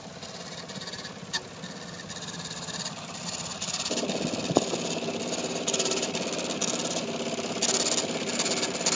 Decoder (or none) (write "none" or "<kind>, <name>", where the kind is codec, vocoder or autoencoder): none